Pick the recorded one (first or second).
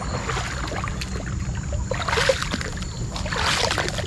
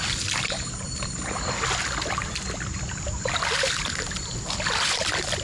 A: first